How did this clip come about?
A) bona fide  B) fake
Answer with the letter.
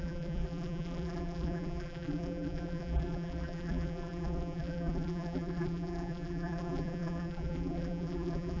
B